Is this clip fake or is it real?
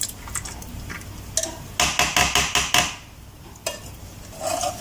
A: real